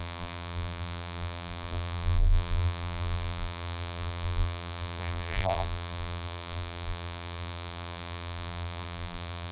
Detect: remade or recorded remade